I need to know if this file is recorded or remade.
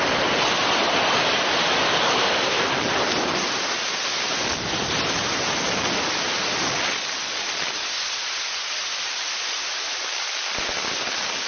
recorded